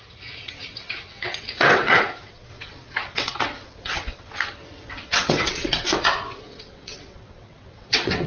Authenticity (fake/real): fake